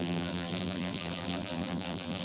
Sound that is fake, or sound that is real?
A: fake